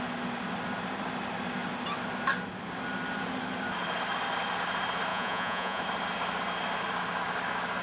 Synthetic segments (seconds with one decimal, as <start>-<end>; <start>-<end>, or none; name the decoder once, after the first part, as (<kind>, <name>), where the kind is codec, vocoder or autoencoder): 5.1-5.8 (vocoder, Vocos)